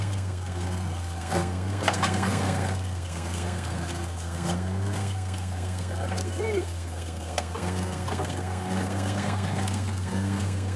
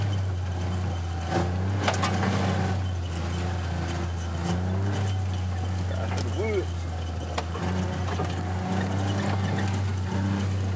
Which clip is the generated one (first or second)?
first